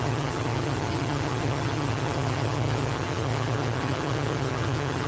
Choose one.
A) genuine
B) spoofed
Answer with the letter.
B